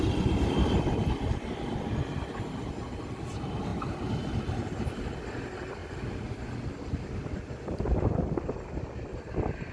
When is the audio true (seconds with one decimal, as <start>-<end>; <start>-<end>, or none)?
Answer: 0.0-9.7